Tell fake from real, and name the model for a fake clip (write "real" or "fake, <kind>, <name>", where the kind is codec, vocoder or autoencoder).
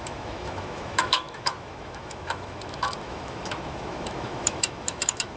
fake, autoencoder, DAC-VAE